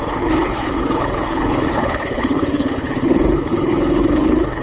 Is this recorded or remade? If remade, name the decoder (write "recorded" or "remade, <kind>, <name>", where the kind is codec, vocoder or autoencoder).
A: remade, codec, HILCodec